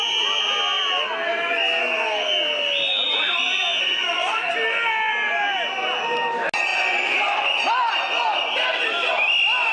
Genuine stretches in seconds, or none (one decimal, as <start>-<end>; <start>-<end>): 0.0-1.8; 2.3-3.8; 4.5-9.7